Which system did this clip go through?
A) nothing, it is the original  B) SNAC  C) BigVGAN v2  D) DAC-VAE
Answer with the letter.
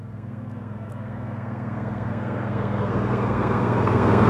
B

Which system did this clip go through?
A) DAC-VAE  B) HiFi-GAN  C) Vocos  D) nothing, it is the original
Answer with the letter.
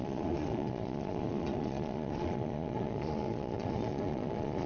C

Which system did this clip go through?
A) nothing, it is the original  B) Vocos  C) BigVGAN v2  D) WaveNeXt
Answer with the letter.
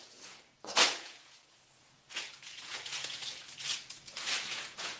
B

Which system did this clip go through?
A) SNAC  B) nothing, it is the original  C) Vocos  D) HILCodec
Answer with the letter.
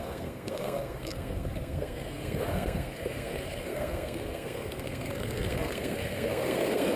A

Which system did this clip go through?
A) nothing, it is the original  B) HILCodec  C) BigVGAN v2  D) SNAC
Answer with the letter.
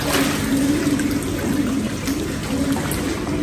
A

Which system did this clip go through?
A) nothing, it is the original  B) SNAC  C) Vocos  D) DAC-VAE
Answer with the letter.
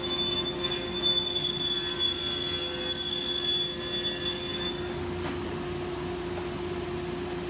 A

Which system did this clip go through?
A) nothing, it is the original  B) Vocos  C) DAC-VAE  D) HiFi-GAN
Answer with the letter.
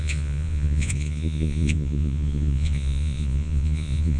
B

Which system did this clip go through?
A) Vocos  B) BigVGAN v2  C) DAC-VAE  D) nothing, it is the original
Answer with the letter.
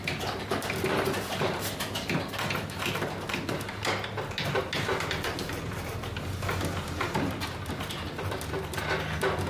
D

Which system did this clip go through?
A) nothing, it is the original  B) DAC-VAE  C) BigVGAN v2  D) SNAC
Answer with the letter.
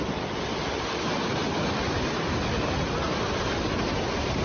A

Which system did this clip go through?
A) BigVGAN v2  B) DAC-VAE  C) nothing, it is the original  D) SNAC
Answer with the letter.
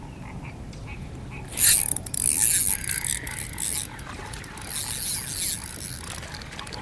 C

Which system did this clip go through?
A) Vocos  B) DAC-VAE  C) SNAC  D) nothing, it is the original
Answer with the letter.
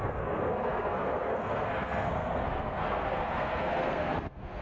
C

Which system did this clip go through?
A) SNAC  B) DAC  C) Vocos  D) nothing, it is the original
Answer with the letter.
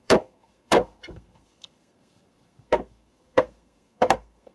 A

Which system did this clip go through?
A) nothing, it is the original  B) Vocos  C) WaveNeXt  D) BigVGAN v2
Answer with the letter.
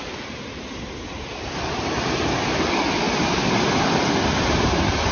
A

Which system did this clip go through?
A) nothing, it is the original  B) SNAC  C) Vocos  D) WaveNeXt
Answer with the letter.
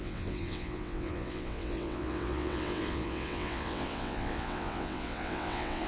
D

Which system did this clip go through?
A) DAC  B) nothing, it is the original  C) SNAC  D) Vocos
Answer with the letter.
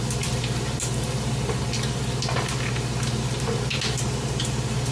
B